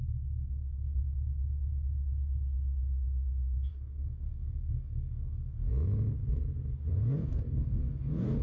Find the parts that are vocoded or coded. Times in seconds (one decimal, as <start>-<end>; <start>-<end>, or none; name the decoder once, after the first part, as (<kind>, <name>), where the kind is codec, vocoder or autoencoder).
0.4-1.0 (codec, DAC); 3.7-5.7; 6.9-8.4